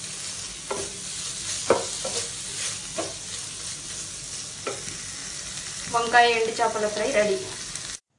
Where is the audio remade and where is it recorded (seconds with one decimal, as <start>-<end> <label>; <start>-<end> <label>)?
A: 0.0-8.2 recorded